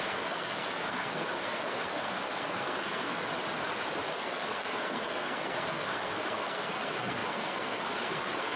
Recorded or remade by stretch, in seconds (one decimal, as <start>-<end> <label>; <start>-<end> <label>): 0.0-3.3 remade; 3.3-4.1 recorded; 4.1-8.6 remade